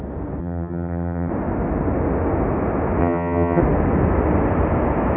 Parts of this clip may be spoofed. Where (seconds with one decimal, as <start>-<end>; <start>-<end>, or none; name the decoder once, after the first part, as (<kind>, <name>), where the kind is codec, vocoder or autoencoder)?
0.4-1.3 (vocoder, HiFi-GAN); 3.0-3.6